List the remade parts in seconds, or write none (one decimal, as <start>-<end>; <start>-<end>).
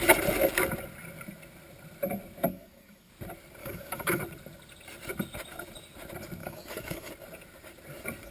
2.5-3.1; 3.6-4.2; 6.4-7.1